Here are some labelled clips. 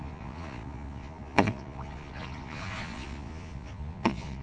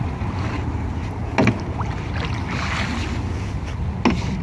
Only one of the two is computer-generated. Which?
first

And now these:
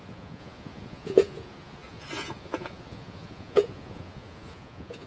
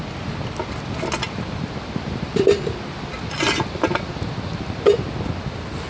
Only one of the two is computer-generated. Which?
first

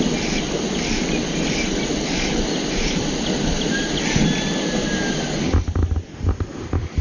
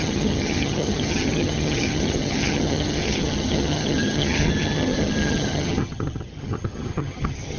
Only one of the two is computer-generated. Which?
second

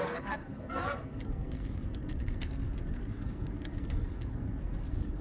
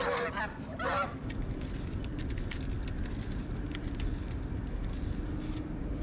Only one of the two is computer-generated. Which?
first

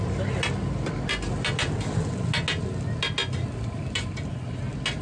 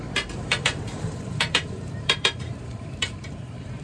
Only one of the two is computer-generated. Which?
second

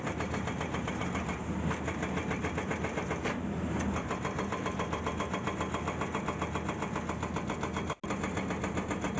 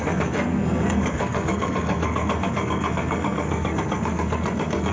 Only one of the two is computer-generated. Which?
second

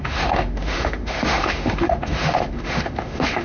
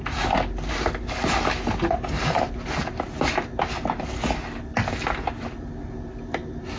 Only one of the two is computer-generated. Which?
first